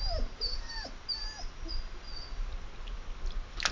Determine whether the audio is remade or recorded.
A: recorded